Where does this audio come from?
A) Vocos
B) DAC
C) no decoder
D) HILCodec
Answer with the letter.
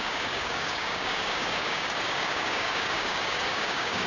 B